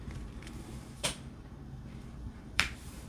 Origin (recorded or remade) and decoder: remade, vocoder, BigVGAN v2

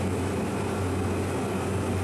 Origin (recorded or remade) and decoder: recorded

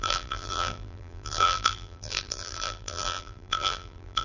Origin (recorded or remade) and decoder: remade, vocoder, BigVGAN v2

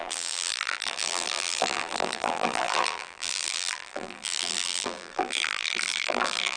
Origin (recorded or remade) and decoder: remade, vocoder, BigVGAN v2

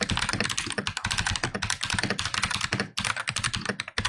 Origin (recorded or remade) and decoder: recorded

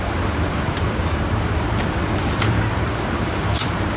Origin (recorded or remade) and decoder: remade, vocoder, BigVGAN v2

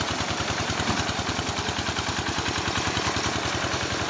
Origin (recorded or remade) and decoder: remade, vocoder, BigVGAN v2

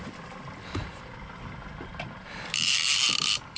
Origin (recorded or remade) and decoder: remade, vocoder, BigVGAN v2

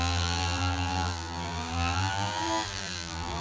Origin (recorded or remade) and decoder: remade, vocoder, BigVGAN v2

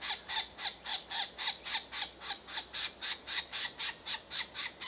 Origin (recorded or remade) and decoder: recorded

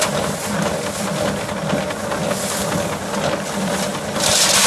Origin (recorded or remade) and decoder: recorded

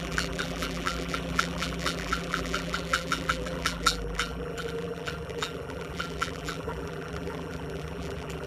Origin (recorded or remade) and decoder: remade, vocoder, BigVGAN v2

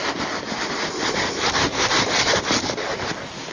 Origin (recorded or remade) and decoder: recorded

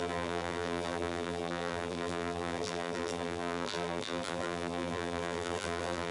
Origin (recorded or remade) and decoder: remade, vocoder, BigVGAN v2